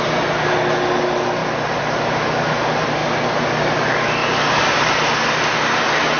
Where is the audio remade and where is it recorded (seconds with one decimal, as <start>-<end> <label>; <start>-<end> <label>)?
0.0-1.4 recorded; 1.4-2.3 remade; 2.3-4.2 recorded; 4.2-5.1 remade; 5.1-6.2 recorded